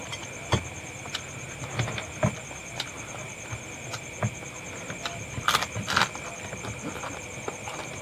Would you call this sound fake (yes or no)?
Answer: no